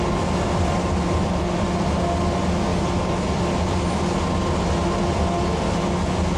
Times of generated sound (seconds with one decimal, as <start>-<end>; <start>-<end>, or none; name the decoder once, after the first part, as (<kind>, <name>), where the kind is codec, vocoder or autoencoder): 2.7-3.4 (vocoder, BigVGAN v2)